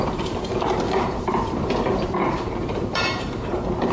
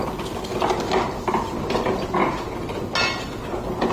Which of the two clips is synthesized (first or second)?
first